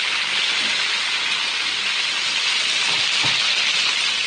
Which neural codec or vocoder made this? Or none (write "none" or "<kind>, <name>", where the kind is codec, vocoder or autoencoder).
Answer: none